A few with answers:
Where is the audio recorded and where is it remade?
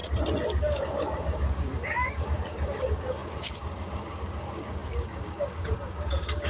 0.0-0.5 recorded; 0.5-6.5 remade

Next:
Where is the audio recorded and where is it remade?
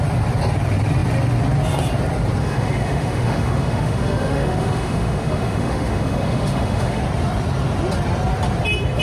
0.0-2.4 recorded; 2.4-7.0 remade; 7.0-9.0 recorded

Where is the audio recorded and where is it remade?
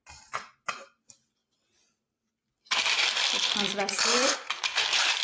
0.0-1.4 recorded; 1.4-4.5 remade; 4.5-5.2 recorded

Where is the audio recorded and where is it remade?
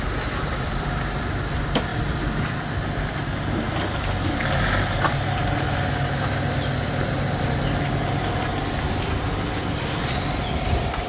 0.0-11.1 recorded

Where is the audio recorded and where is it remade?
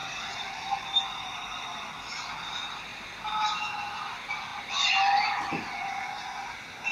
0.0-1.9 remade; 1.9-6.9 recorded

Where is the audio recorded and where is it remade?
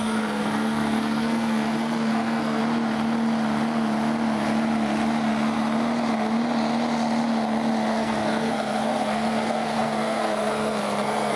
0.0-2.6 remade; 2.6-7.9 recorded; 7.9-11.4 remade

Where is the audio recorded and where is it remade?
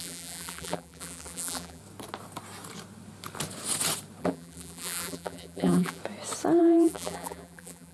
0.0-1.8 remade; 1.8-4.2 recorded; 4.2-6.0 remade; 6.0-6.6 recorded; 6.6-7.9 remade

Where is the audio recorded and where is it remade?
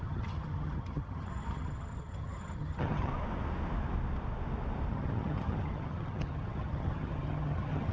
0.0-3.1 remade; 3.1-4.9 recorded; 4.9-7.9 remade